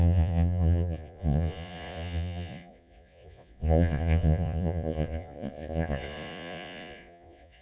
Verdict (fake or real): fake